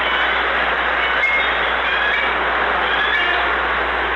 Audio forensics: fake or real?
real